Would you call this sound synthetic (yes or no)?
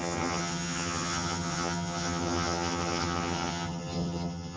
yes